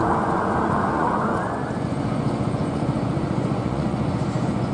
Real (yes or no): no